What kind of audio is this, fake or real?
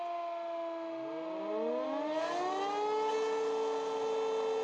real